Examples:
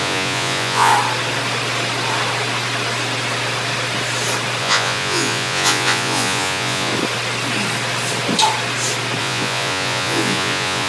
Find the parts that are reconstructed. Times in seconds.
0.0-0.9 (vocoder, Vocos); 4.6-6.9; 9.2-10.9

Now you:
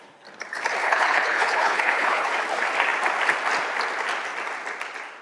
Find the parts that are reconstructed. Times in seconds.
0.8-2.3 (codec, HILCodec)

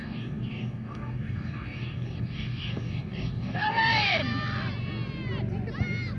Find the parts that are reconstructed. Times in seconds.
0.0-4.2 (codec, DAC)

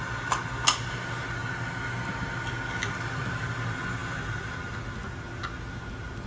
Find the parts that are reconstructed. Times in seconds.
none